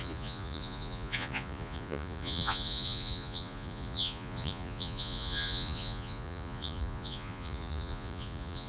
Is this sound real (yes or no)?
no